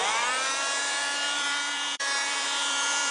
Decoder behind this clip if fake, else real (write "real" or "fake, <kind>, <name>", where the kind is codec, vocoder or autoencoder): fake, vocoder, BigVGAN v2